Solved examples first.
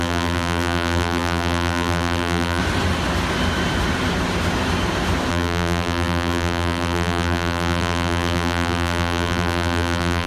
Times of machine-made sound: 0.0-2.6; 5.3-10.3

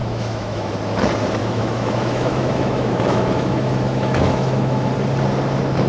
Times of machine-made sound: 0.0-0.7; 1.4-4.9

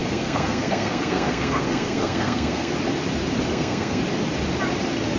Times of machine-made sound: 0.0-2.7; 3.5-4.0

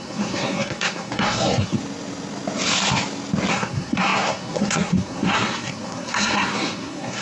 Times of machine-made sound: 0.0-1.8; 3.5-7.2